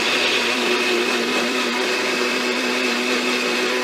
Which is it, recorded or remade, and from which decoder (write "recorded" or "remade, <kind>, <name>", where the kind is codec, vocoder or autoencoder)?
remade, vocoder, BigVGAN v2